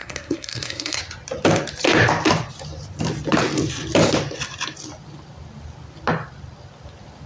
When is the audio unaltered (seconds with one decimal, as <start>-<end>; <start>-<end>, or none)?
1.0-7.3